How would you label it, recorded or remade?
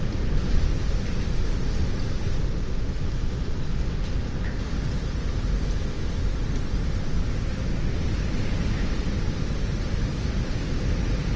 recorded